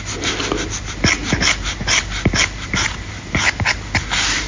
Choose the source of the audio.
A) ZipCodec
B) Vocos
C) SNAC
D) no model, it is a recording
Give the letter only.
D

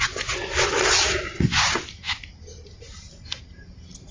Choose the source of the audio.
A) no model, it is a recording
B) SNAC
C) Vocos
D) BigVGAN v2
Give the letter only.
A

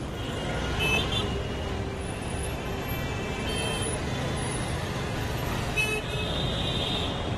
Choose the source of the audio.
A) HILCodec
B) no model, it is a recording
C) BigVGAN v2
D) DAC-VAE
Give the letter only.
B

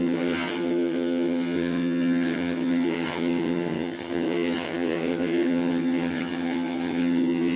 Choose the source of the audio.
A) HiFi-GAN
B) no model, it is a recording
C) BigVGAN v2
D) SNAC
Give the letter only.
A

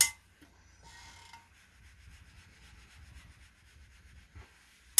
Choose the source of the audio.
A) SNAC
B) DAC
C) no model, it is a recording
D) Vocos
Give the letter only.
C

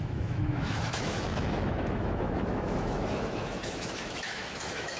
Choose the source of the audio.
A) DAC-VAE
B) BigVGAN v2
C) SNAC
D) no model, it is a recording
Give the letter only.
A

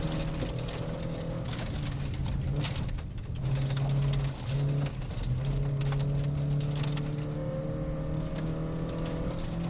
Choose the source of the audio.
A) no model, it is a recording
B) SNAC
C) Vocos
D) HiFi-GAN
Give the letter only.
A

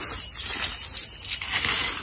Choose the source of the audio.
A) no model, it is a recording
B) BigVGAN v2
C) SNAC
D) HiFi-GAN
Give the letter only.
A